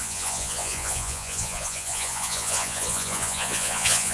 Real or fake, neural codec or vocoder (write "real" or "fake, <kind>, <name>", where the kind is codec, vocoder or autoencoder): fake, vocoder, Vocos